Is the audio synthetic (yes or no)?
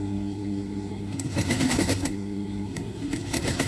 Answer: yes